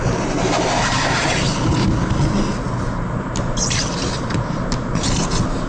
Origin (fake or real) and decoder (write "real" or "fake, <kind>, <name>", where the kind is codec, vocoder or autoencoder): real